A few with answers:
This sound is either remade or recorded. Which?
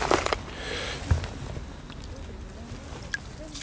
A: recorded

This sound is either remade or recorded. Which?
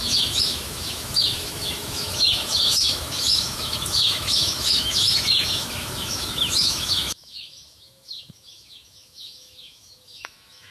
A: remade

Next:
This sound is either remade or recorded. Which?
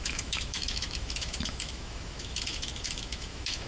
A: remade